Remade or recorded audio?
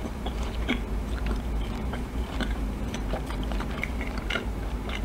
remade